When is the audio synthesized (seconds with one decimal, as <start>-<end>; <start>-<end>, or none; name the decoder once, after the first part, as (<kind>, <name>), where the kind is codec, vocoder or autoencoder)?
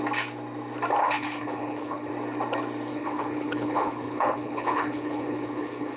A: 1.0-2.1 (codec, HILCodec); 2.9-6.0